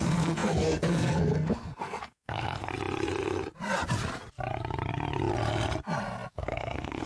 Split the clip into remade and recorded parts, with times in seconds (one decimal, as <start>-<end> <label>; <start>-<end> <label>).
0.0-2.7 remade; 2.7-6.3 recorded; 6.3-7.1 remade